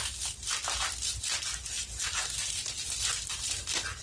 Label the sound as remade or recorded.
recorded